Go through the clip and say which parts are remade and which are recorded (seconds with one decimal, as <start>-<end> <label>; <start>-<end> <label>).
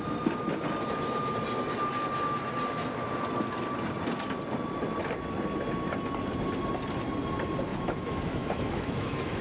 0.0-7.7 recorded; 7.7-9.4 remade